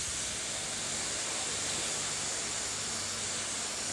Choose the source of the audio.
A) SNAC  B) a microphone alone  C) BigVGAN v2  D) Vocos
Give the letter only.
B